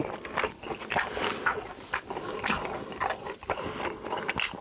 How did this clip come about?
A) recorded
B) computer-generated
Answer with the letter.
A